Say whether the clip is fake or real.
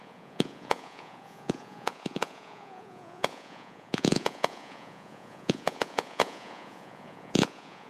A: fake